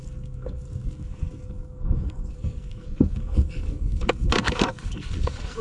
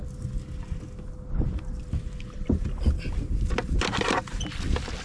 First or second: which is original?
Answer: second